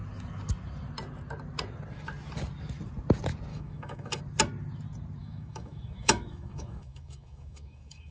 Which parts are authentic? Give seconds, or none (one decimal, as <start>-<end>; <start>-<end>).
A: 0.0-3.5; 4.2-5.2